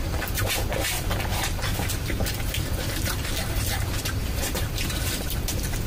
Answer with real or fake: fake